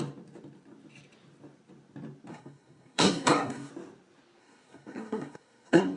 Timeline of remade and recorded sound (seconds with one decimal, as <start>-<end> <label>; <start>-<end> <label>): 0.0-2.3 recorded; 2.3-3.7 remade; 3.7-4.4 recorded; 4.4-6.0 remade